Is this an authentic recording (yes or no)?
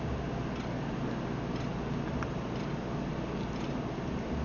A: yes